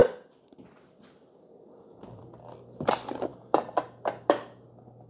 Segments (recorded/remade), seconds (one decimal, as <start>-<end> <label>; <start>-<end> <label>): 0.0-5.1 recorded